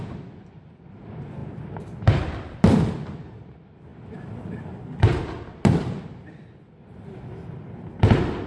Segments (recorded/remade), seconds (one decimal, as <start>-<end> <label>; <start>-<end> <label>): 0.0-1.4 recorded; 1.4-3.5 remade; 3.5-3.9 recorded; 3.9-7.1 remade; 7.1-8.5 recorded